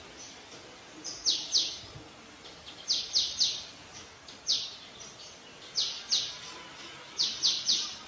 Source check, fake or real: real